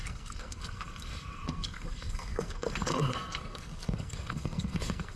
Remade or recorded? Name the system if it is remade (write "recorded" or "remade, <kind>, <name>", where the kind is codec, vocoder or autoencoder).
remade, codec, SNAC